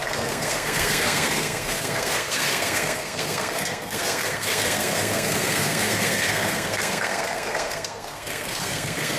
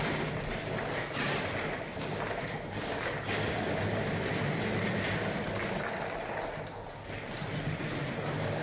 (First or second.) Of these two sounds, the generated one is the first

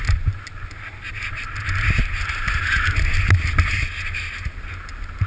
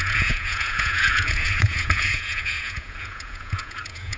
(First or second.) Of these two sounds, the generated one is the second